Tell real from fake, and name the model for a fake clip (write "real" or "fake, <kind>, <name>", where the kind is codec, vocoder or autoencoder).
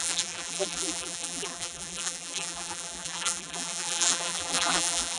fake, vocoder, BigVGAN v2